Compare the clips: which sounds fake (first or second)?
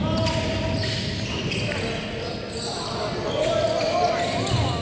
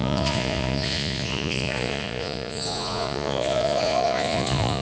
second